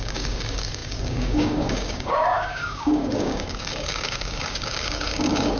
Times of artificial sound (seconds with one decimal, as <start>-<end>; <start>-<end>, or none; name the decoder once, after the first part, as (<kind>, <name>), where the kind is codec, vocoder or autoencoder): 0.0-5.6 (codec, DAC)